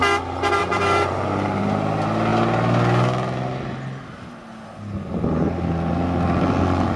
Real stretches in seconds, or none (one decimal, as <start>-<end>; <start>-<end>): 0.0-0.6; 1.6-7.0